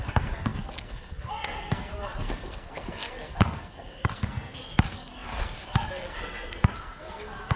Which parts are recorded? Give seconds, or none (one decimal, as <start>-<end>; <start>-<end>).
none